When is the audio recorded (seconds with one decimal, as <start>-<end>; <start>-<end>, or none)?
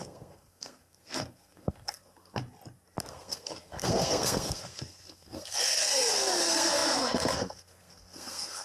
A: 2.4-3.1